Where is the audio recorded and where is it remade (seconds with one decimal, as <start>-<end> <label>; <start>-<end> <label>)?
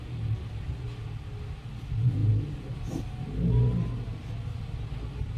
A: 0.0-5.4 recorded